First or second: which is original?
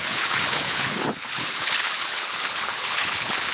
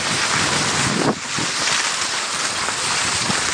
second